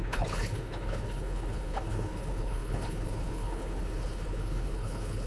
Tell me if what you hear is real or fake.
fake